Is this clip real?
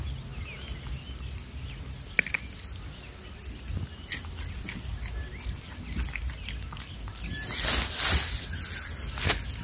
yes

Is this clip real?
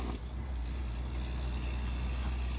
yes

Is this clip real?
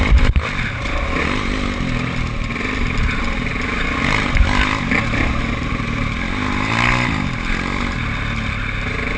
yes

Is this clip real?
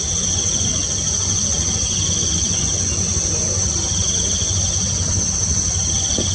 no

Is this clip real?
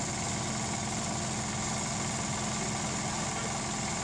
yes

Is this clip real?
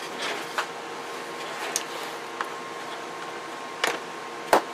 yes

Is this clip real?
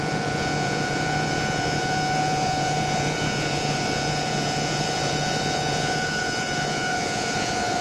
no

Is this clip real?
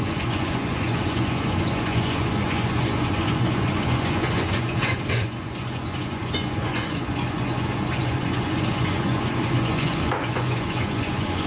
no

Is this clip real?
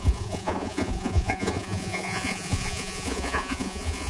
no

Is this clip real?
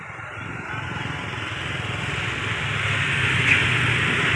yes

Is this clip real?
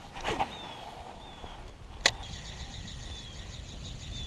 yes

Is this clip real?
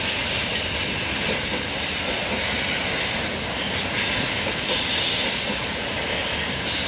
yes